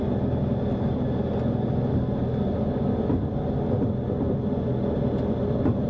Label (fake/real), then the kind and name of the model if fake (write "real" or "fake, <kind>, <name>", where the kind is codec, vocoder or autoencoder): real